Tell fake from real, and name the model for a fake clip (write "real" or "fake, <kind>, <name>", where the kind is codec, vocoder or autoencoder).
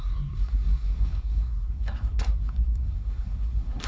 fake, codec, SNAC